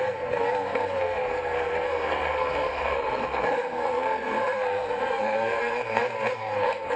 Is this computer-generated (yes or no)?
yes